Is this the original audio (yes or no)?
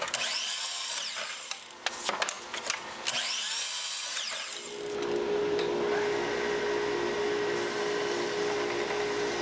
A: yes